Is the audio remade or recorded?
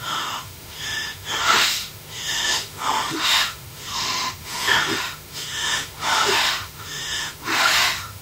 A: remade